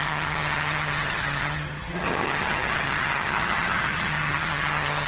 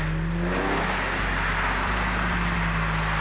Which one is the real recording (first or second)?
second